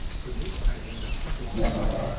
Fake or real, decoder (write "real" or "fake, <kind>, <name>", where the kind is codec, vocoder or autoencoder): real